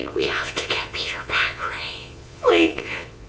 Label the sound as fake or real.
fake